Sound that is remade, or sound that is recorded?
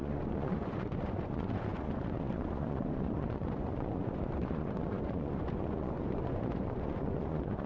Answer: remade